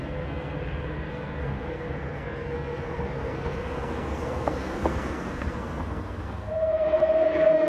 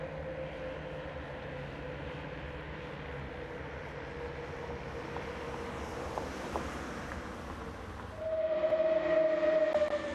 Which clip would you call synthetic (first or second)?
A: first